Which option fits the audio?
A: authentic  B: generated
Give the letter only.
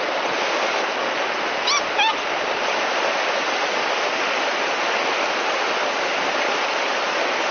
A